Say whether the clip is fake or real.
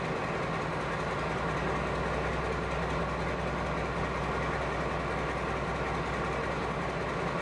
real